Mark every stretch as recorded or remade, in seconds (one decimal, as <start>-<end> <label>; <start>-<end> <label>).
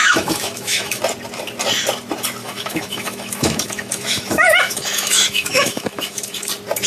0.0-1.0 remade; 1.0-2.4 recorded; 2.4-6.5 remade; 6.5-6.9 recorded